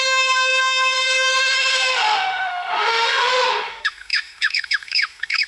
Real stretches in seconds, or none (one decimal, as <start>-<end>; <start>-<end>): none